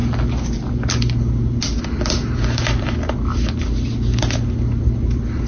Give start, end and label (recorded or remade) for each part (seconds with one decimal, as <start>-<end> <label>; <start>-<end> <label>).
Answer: 0.0-5.5 recorded